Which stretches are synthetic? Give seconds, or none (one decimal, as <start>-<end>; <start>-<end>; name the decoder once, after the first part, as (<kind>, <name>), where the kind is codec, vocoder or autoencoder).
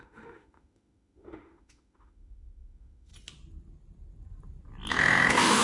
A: 0.0-3.1 (autoencoder, DAC-VAE); 4.9-5.6